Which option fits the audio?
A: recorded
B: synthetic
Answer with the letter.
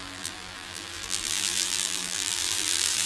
B